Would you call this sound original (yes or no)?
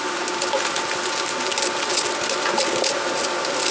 yes